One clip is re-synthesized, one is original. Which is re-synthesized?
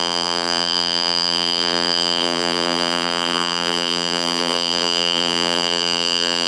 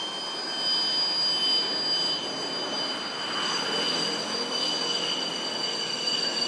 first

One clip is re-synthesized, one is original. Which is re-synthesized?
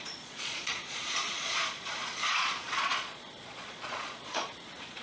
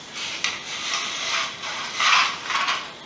first